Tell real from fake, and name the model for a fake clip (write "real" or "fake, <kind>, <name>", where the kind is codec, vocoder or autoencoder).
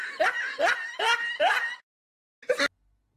real